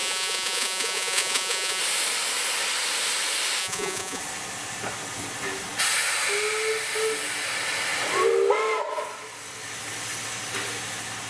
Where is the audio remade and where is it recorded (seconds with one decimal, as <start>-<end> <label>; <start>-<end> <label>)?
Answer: 0.0-1.8 remade; 1.8-3.6 recorded; 3.6-4.2 remade; 4.2-11.3 recorded